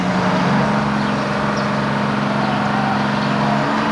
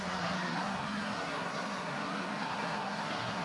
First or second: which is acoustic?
first